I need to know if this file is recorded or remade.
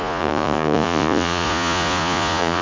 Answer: remade